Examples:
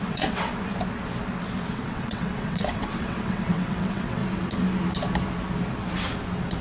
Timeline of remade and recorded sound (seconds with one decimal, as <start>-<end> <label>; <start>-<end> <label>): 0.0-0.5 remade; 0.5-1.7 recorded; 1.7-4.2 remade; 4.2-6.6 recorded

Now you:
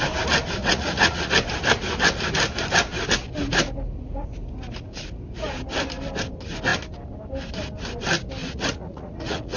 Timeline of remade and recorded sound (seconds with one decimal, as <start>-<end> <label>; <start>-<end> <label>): 0.0-0.6 recorded; 0.6-1.3 remade; 1.3-8.4 recorded; 8.4-9.6 remade

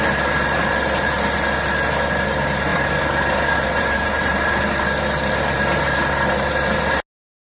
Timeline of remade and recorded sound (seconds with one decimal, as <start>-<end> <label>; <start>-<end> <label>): 0.0-2.7 recorded; 2.7-4.6 remade; 4.6-7.4 recorded

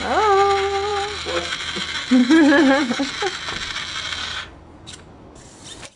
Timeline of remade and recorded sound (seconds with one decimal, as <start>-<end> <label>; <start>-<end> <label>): 0.0-2.2 recorded; 2.2-3.1 remade; 3.1-4.2 recorded; 4.2-5.6 remade; 5.6-6.0 recorded